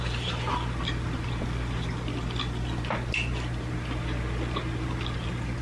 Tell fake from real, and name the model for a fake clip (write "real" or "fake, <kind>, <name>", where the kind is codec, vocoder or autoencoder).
real